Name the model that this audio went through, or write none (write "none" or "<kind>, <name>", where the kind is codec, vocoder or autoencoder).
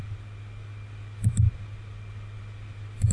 none